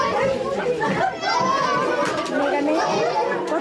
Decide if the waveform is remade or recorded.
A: recorded